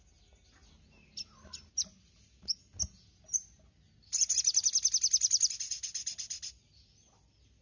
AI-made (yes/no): no